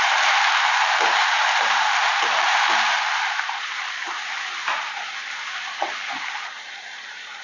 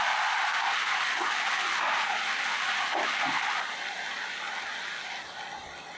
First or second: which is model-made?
first